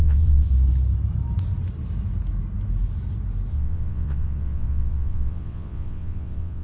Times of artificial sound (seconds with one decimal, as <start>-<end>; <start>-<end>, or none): 0.0-0.5; 3.5-6.6